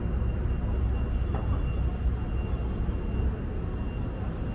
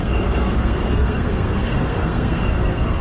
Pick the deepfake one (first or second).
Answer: second